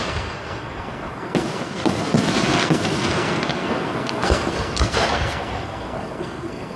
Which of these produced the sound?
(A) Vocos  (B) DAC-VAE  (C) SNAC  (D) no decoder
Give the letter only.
C